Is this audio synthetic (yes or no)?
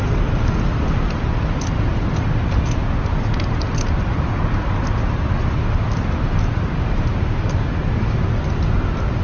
no